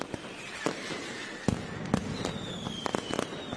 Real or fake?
real